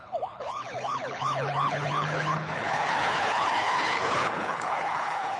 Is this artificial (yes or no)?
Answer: yes